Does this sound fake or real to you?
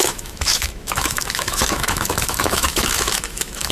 fake